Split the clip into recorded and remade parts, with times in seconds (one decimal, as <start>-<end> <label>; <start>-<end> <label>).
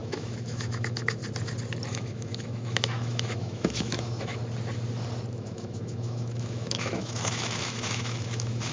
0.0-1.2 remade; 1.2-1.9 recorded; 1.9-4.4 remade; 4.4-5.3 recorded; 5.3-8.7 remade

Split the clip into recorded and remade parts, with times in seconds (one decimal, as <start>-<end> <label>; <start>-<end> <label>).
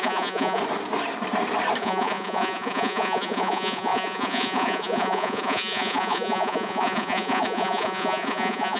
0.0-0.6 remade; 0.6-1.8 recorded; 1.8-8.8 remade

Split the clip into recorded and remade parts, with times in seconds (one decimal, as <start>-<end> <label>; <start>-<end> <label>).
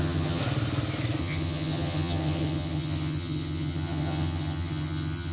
0.0-0.4 remade; 0.4-1.2 recorded; 1.2-5.3 remade